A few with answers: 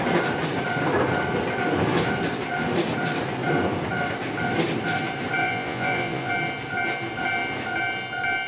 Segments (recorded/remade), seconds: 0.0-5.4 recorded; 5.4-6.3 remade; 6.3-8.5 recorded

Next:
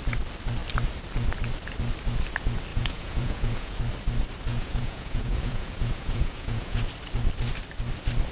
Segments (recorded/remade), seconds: 0.0-2.7 recorded; 2.7-3.8 remade; 3.8-4.5 recorded; 4.5-6.8 remade; 6.8-8.3 recorded

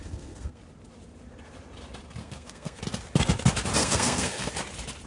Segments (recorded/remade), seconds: 0.0-0.6 remade; 0.6-2.2 recorded; 2.2-2.8 remade; 2.8-3.8 recorded; 3.8-4.5 remade; 4.5-5.1 recorded

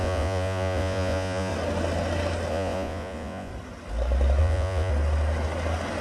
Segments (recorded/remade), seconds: 0.0-1.5 remade; 1.5-2.5 recorded; 2.5-3.5 remade; 3.5-4.4 recorded; 4.4-4.9 remade; 4.9-6.0 recorded

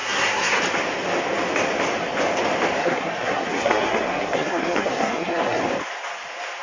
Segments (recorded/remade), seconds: 0.0-0.6 remade; 0.6-2.8 recorded; 2.8-5.6 remade; 5.6-6.6 recorded